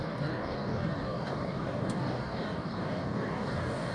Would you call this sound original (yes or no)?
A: no